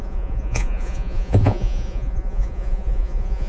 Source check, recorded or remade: remade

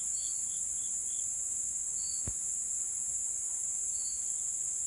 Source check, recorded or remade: recorded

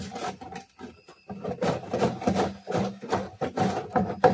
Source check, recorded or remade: recorded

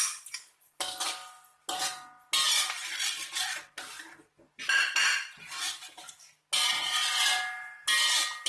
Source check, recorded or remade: recorded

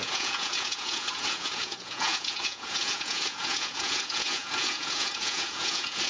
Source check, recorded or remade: remade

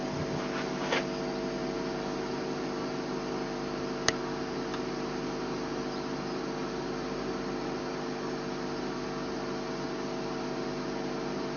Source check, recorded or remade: recorded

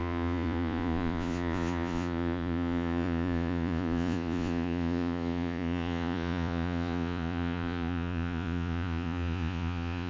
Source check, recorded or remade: remade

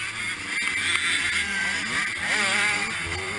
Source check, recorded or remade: recorded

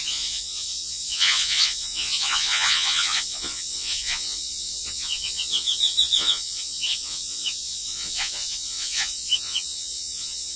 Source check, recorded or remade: remade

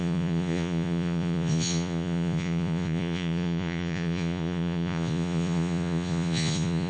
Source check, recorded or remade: remade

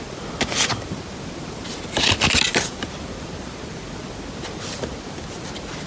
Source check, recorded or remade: recorded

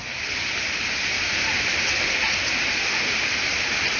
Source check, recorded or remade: recorded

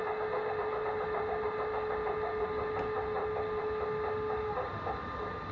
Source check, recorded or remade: recorded